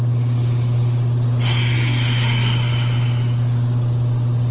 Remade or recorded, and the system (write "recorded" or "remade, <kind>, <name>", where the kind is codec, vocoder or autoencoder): recorded